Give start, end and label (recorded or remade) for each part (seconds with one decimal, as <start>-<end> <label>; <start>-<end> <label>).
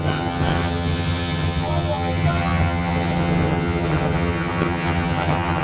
0.0-5.6 remade